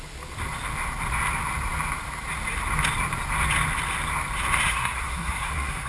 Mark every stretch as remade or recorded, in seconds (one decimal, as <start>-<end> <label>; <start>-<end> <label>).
0.0-4.7 recorded; 4.7-5.9 remade